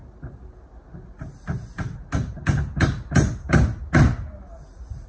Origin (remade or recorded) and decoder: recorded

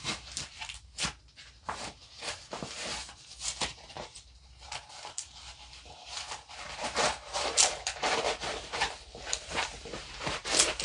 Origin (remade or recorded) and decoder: remade, vocoder, BigVGAN v2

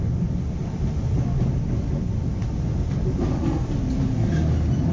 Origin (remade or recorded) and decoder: recorded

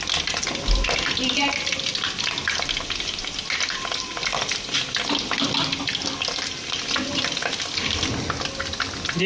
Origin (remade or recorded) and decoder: recorded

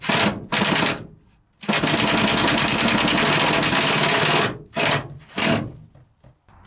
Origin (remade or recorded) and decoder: recorded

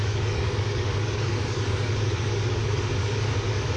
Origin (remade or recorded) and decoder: remade, codec, DAC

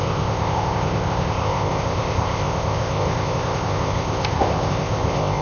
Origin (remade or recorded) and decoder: remade, codec, ZipCodec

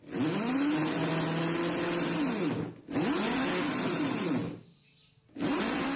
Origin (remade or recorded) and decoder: recorded